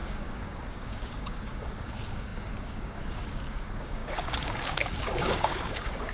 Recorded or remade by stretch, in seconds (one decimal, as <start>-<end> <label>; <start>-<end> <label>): 0.0-6.1 remade